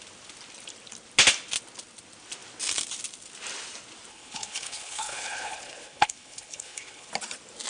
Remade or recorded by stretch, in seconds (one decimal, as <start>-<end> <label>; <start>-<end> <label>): 0.0-4.1 recorded; 4.1-7.1 remade; 7.1-7.7 recorded